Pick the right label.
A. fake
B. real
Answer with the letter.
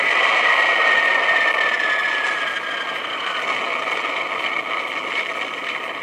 B